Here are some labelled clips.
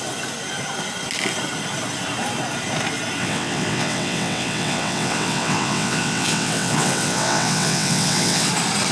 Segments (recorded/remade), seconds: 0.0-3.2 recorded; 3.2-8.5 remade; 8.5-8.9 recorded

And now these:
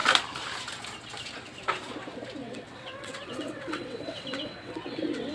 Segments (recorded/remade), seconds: 0.0-2.4 recorded; 2.4-5.3 remade

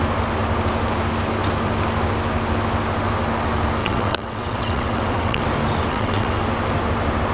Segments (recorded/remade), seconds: 0.0-3.8 recorded; 3.8-5.4 remade; 5.4-5.9 recorded; 5.9-6.4 remade; 6.4-7.3 recorded

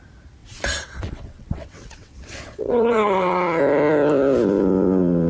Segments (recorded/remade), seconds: 0.0-0.4 recorded; 0.4-3.6 remade; 3.6-5.3 recorded

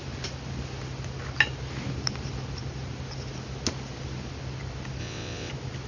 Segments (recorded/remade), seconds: 0.0-5.0 recorded; 5.0-5.5 remade; 5.5-5.9 recorded

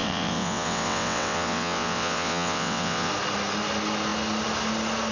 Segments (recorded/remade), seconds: 0.0-3.1 remade; 3.1-5.1 recorded